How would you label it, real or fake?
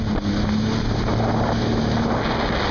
real